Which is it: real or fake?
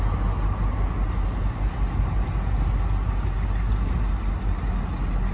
real